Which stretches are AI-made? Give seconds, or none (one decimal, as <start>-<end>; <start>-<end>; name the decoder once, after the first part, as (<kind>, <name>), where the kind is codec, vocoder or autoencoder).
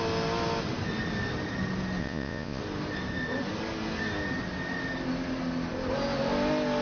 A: 2.0-2.6 (vocoder, Vocos)